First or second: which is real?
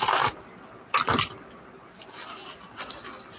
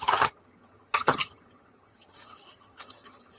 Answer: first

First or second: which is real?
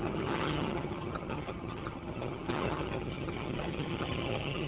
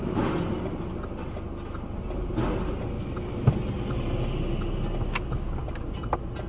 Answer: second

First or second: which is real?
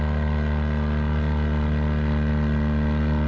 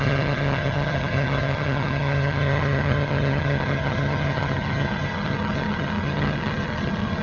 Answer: first